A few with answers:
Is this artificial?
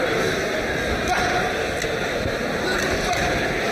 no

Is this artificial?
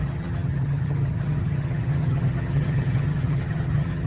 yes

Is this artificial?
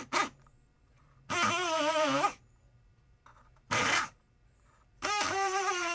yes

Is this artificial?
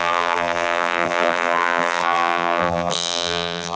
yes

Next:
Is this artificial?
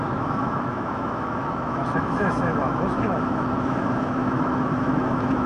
yes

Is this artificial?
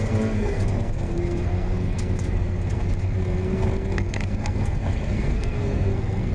yes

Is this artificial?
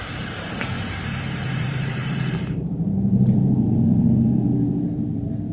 yes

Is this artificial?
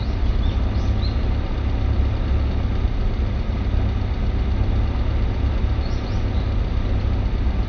no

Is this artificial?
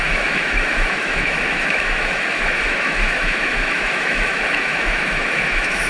yes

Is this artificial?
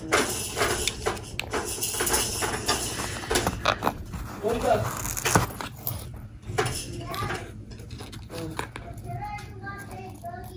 no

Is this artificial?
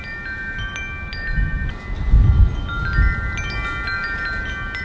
no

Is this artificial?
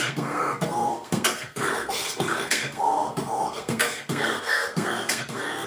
yes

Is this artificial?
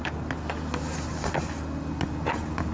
no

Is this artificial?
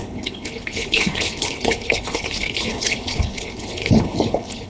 yes